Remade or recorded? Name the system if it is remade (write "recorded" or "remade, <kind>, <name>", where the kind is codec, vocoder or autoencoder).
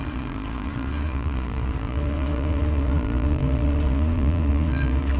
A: remade, vocoder, Vocos